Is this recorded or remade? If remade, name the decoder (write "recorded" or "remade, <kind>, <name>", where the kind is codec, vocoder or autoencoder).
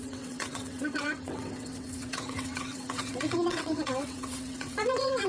remade, vocoder, WaveNeXt